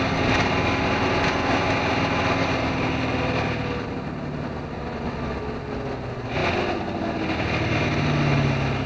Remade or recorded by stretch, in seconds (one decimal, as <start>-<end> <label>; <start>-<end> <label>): 0.0-8.9 recorded